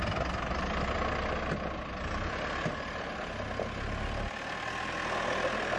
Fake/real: real